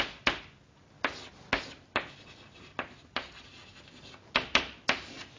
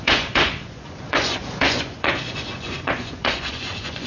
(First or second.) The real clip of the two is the first